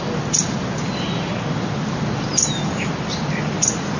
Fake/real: real